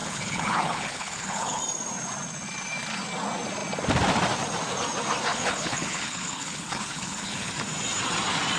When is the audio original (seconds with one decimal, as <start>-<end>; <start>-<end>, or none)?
1.6-5.3; 7.5-8.6